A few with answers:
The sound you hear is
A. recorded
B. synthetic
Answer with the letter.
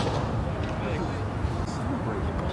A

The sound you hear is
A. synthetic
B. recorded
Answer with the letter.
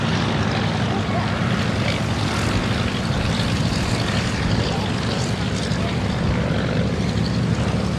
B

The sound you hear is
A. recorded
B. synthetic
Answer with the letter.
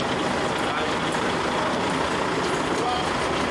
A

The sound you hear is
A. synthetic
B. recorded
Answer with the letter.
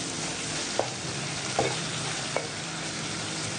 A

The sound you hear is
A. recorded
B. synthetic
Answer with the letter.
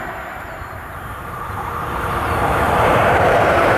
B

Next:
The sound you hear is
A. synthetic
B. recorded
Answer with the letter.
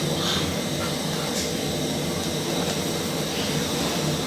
B